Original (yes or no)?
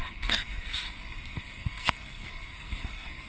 no